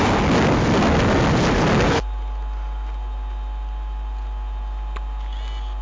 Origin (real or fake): real